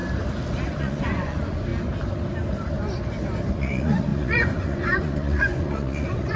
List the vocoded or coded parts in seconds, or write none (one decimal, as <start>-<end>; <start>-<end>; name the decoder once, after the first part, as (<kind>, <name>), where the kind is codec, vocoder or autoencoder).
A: 0.8-1.7 (vocoder, Vocos); 3.5-6.4